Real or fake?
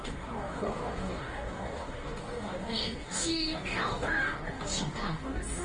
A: fake